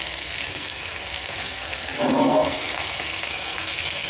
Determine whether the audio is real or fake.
fake